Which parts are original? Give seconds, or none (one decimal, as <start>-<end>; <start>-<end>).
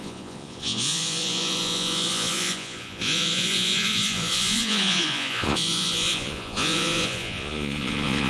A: none